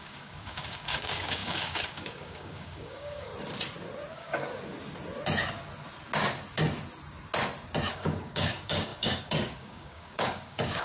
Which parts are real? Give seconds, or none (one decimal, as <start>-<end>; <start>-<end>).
3.3-4.1; 4.5-7.9